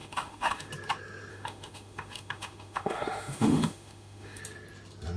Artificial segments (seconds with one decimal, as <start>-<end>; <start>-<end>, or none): 0.0-0.7; 1.3-4.4